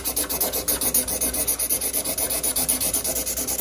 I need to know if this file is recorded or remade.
recorded